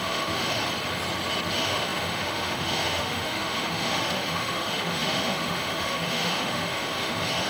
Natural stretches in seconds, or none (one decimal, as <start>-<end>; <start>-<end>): 0.6-1.5